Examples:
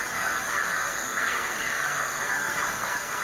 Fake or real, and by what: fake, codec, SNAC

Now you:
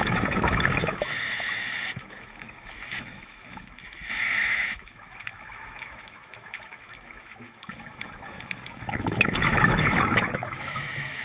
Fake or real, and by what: fake, autoencoder, DAC-VAE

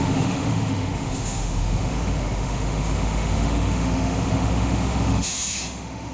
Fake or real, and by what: fake, autoencoder, DAC-VAE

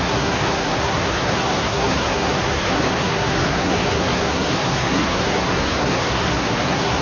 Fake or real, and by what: fake, codec, SNAC